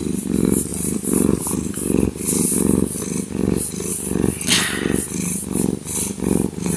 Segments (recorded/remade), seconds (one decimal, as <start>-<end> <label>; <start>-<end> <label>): 0.0-6.8 recorded